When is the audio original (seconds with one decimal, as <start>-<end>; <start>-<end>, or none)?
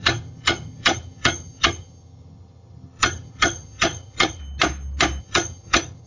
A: 4.4-5.2